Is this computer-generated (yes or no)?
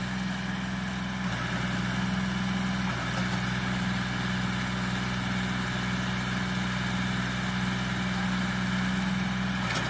no